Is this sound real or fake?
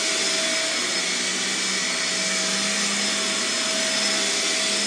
real